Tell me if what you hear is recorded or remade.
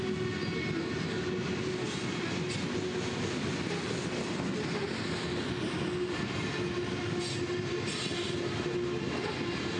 recorded